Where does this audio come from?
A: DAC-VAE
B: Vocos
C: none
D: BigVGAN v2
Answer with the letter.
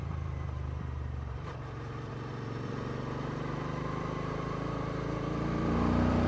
D